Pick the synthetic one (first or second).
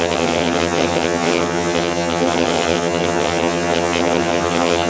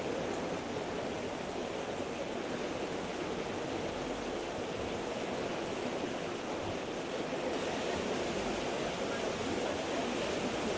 first